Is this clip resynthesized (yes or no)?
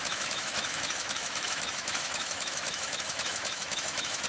yes